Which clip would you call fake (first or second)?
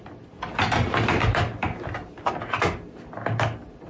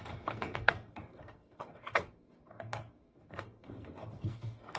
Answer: second